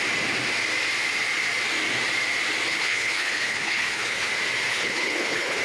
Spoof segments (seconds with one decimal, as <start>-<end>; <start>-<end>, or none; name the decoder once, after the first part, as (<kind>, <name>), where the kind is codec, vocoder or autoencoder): 2.7-4.3 (codec, HILCodec); 4.7-5.6

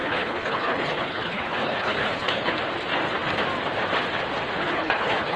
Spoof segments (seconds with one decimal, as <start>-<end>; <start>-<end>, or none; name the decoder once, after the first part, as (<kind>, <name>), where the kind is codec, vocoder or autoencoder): 0.0-2.5 (codec, HILCodec); 4.6-5.4

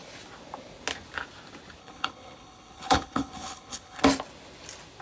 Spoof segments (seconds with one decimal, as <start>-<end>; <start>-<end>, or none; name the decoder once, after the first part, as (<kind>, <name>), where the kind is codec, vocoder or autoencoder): 1.8-4.0 (codec, HILCodec)

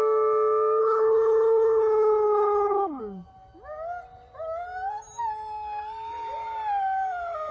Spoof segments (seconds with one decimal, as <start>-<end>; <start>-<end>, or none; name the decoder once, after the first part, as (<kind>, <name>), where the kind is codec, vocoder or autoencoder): 0.8-3.0 (codec, HILCodec)